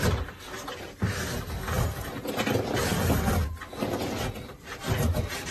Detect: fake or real fake